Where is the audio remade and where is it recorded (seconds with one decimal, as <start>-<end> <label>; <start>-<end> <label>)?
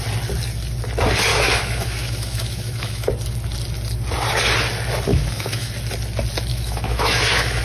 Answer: 0.0-1.3 recorded; 1.3-3.1 remade; 3.1-5.1 recorded; 5.1-5.7 remade; 5.7-6.5 recorded; 6.5-7.6 remade